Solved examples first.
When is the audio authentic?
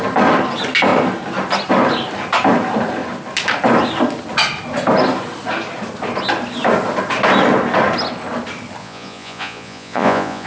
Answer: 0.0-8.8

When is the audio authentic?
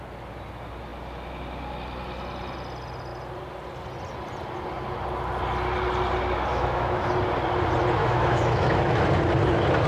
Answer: 0.0-6.5; 7.1-8.0; 9.0-9.9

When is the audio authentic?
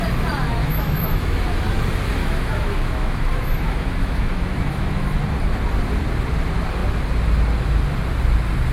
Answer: 0.0-0.6; 1.6-2.2; 5.2-8.7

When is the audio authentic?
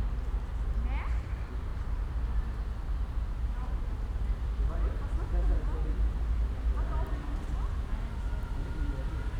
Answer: 0.0-9.4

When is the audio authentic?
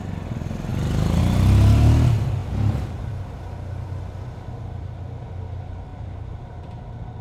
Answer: 0.0-2.4; 3.0-5.9; 6.8-7.2